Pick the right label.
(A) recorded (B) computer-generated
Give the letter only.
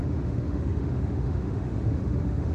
B